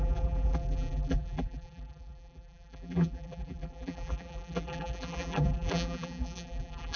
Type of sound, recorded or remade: remade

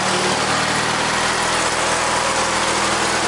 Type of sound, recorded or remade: recorded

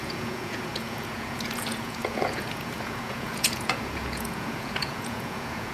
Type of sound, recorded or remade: remade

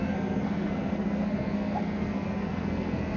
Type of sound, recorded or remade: remade